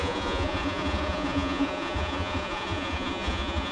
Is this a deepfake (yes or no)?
yes